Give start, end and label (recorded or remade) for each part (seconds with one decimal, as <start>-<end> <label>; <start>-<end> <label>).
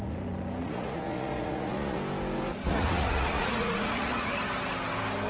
0.0-0.6 recorded; 0.6-2.0 remade; 2.0-2.5 recorded; 2.5-4.4 remade; 4.4-5.3 recorded